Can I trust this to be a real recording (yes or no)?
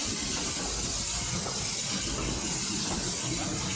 no